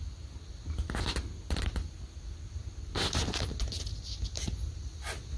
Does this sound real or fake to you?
real